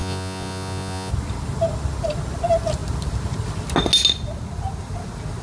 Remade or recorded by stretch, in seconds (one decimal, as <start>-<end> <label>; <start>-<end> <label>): 0.0-1.1 remade; 1.1-5.4 recorded